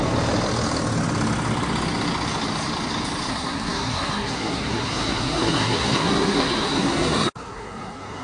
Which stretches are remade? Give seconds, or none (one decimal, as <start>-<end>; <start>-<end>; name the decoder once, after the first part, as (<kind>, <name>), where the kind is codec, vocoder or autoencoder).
3.3-8.2 (codec, SNAC)